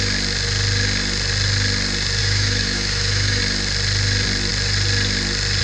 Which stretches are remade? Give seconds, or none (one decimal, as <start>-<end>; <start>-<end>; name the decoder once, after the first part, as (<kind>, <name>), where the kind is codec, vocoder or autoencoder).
2.2-3.4 (autoencoder, DAC-VAE)